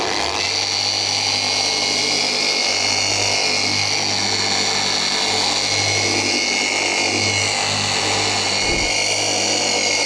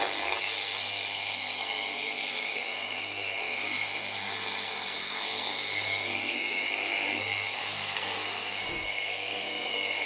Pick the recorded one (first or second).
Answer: first